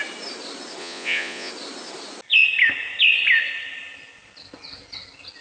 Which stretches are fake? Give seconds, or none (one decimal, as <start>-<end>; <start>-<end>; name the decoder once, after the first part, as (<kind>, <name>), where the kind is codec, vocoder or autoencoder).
0.8-1.5 (vocoder, Vocos)